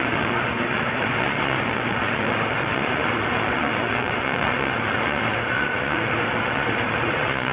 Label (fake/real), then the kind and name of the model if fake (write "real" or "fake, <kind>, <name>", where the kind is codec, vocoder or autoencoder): fake, vocoder, Vocos